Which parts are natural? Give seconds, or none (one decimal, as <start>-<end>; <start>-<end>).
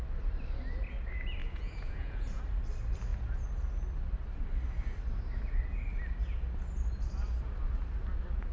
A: 0.0-1.4; 2.4-8.5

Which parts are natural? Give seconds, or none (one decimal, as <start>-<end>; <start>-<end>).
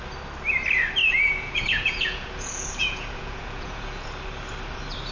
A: 0.0-1.0; 4.1-5.1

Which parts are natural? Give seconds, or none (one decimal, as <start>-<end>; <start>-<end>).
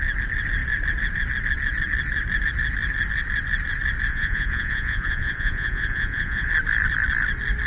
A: 0.0-4.1; 6.5-7.7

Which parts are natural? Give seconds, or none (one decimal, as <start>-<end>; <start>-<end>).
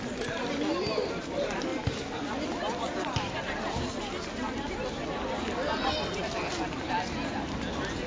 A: 0.0-8.1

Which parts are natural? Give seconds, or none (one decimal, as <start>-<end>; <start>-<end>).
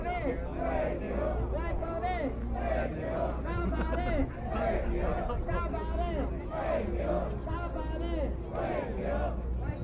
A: 0.0-9.8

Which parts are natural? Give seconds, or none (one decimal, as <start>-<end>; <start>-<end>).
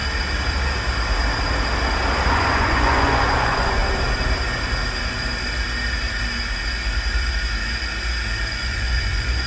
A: 0.0-2.3; 3.8-8.5